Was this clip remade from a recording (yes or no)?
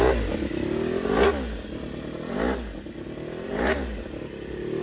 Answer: no